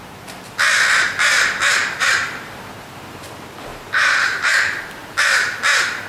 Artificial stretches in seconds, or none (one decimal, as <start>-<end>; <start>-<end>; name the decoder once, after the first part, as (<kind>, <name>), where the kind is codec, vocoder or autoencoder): 1.8-2.7 (vocoder, BigVGAN v2); 3.7-4.8